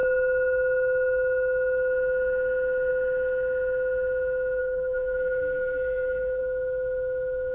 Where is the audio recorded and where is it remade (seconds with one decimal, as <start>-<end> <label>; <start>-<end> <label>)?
0.0-4.6 recorded; 4.6-6.4 remade; 6.4-7.5 recorded